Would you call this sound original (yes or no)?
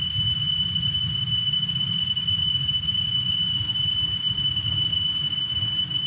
yes